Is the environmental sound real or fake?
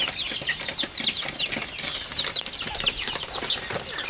real